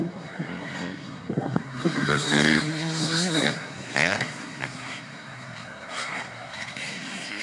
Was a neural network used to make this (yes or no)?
yes